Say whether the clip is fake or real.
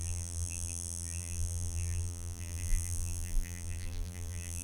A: fake